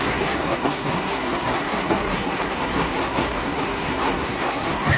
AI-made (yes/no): yes